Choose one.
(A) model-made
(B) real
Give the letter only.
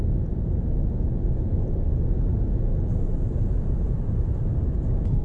B